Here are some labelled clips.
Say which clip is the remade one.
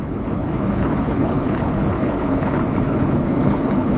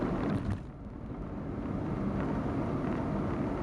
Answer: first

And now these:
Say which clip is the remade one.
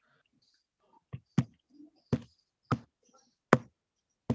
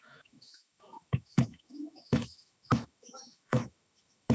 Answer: second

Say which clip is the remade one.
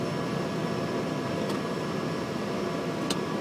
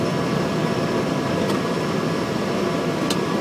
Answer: second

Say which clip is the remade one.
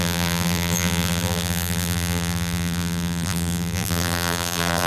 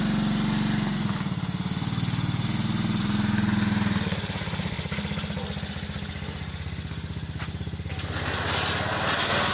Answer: first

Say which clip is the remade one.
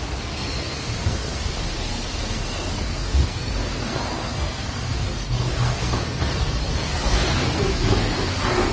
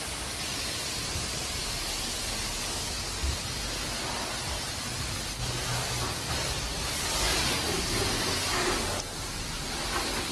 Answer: first